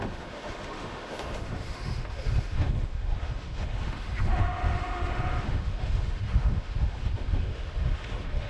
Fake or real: fake